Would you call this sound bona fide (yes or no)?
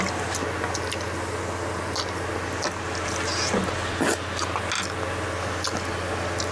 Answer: yes